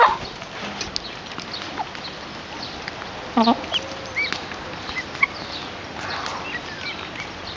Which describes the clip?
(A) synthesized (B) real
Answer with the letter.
B